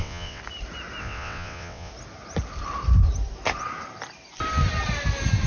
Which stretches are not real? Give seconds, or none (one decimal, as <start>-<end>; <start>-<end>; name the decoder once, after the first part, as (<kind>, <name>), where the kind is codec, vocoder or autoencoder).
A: 0.0-0.4 (vocoder, WaveNeXt); 1.0-1.9